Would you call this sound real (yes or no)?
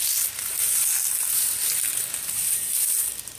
yes